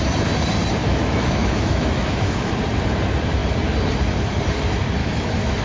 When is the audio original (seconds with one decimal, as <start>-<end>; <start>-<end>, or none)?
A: 0.0-0.8; 2.5-5.0